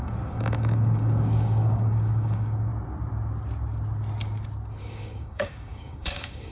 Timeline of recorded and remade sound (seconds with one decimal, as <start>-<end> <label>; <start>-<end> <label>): 0.0-2.7 remade; 2.7-4.8 recorded; 4.8-6.5 remade

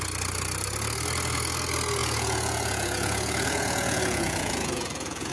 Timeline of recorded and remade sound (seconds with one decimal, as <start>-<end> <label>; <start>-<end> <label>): 0.0-2.0 recorded; 2.0-5.3 remade

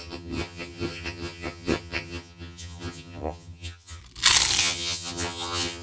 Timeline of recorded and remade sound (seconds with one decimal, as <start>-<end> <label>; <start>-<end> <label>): 0.0-4.0 remade; 4.0-4.6 recorded; 4.6-5.8 remade

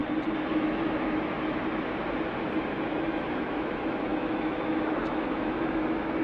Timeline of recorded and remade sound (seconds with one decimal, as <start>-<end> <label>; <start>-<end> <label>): 0.0-0.5 recorded; 0.5-1.6 remade; 1.6-2.6 recorded; 2.6-6.2 remade

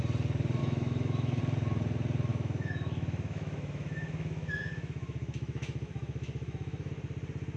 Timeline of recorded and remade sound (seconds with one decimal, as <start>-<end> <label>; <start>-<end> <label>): 0.0-0.6 recorded; 0.6-1.4 remade; 1.4-2.3 recorded; 2.3-6.9 remade; 6.9-7.6 recorded

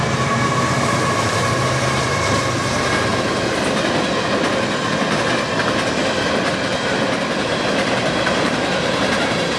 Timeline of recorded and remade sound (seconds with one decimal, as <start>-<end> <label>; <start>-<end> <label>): 0.0-3.1 remade; 3.1-7.4 recorded; 7.4-9.6 remade

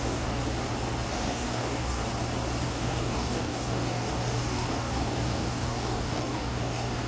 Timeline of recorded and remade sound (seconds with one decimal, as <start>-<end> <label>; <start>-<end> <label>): 0.0-0.4 remade; 0.4-1.1 recorded; 1.1-2.0 remade; 2.0-2.6 recorded; 2.6-7.1 remade

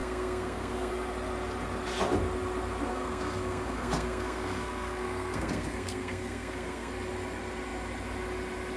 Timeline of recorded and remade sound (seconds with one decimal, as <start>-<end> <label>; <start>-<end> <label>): 0.0-0.9 remade; 0.9-2.9 recorded; 2.9-6.9 remade; 6.9-8.8 recorded